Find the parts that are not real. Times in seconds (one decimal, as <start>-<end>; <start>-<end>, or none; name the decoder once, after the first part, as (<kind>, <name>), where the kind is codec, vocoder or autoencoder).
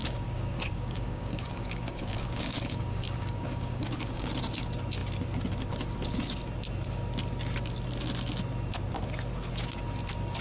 0.0-4.3 (codec, DAC)